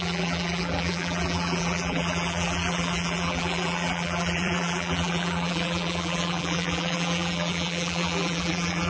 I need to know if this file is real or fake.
fake